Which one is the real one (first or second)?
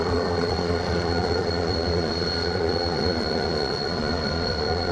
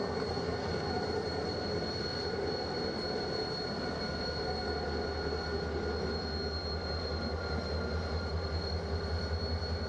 second